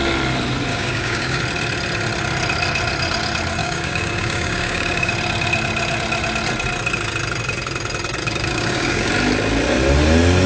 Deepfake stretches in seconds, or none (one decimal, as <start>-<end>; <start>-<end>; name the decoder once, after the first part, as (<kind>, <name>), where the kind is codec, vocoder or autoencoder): 0.7-1.4 (codec, DAC); 3.6-5.1; 8.2-9.1

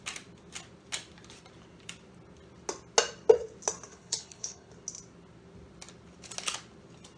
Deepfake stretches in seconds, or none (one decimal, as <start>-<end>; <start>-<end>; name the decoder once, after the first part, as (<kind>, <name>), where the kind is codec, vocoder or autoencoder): 3.9-4.7 (codec, HILCodec)

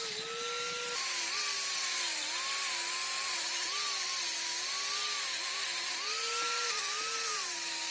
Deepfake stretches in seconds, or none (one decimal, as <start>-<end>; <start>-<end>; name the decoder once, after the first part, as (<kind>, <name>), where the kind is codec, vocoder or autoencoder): none

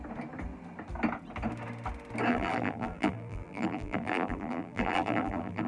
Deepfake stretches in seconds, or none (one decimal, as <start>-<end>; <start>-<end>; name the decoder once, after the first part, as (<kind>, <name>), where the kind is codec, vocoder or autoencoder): 2.3-5.7 (vocoder, BigVGAN v2)

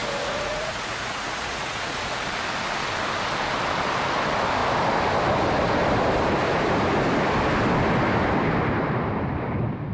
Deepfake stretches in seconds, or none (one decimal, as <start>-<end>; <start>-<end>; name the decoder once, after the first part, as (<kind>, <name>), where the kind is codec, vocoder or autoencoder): 0.0-2.1 (vocoder, Vocos)